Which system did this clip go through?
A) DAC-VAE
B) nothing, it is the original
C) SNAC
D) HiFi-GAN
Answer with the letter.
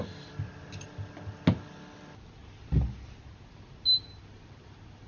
B